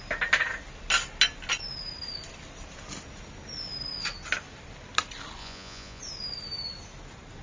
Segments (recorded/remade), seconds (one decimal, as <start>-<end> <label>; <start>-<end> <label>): 0.0-5.4 recorded; 5.4-6.0 remade; 6.0-7.4 recorded